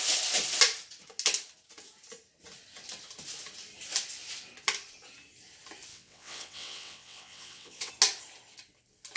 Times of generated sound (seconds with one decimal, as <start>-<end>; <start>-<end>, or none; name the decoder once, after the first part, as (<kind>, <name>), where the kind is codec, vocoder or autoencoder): 5.9-7.9 (vocoder, WaveNeXt)